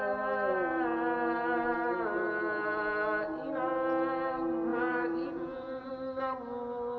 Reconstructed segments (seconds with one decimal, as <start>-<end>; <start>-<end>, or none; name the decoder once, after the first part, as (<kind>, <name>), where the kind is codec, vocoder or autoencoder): 4.7-5.9 (vocoder, Vocos)